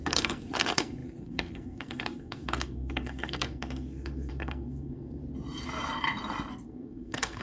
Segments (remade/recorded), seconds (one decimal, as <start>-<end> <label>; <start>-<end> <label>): 0.0-5.2 remade; 5.2-6.5 recorded; 6.5-7.4 remade